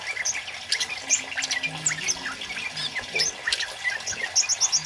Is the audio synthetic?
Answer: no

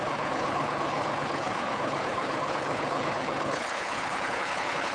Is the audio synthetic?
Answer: yes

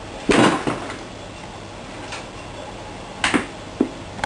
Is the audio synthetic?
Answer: no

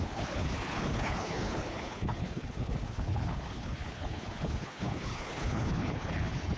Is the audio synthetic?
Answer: yes